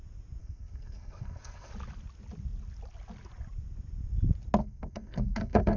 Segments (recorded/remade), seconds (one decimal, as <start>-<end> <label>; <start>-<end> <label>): 0.0-0.4 recorded; 0.4-1.7 remade; 1.7-4.6 recorded; 4.6-5.8 remade